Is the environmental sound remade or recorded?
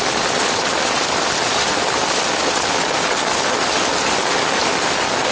recorded